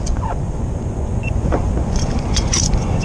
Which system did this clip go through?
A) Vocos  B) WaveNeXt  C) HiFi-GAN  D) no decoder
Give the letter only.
A